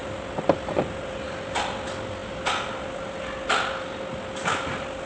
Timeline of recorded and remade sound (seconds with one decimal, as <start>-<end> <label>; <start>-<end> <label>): 0.0-5.1 recorded